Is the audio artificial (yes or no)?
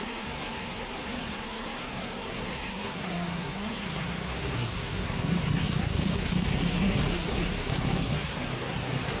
yes